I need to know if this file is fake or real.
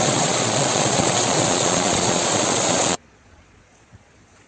fake